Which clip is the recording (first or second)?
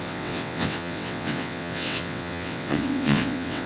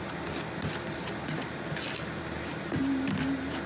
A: second